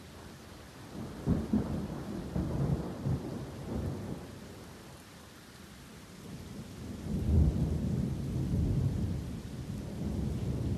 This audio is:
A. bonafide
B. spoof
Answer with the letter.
A